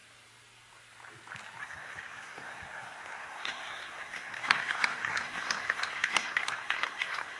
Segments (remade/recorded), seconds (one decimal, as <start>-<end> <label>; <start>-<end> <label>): 0.0-1.6 recorded; 1.6-7.4 remade